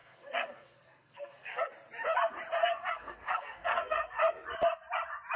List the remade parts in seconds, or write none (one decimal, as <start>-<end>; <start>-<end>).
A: 0.0-1.7; 2.6-4.2